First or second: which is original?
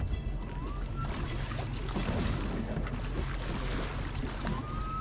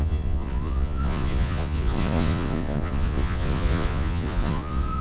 first